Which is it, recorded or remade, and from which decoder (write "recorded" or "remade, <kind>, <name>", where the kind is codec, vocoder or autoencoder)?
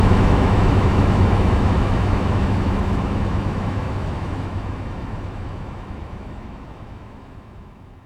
remade, autoencoder, DAC-VAE